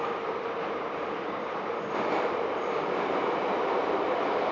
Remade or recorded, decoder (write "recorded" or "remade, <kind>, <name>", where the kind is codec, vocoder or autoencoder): remade, vocoder, BigVGAN v2